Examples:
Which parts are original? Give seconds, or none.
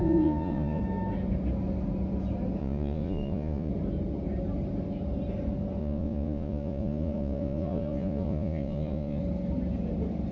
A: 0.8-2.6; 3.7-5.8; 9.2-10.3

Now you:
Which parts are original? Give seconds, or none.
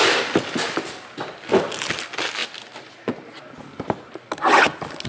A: 0.0-2.4; 3.5-5.1